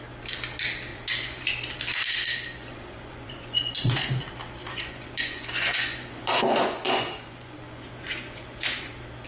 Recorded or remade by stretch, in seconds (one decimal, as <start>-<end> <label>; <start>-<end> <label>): 0.0-0.9 recorded; 0.9-1.5 remade; 1.5-2.6 recorded; 2.6-4.1 remade; 4.1-4.6 recorded; 4.6-8.9 remade; 8.9-9.3 recorded